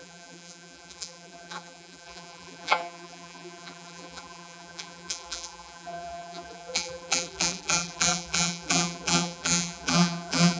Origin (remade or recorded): remade